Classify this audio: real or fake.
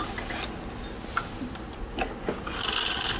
real